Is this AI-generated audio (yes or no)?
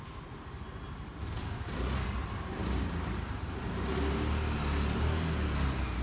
no